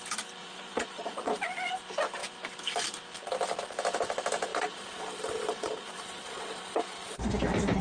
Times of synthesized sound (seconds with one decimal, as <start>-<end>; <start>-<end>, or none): 0.4-1.7; 4.5-7.2